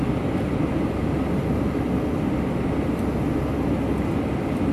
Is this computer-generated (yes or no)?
no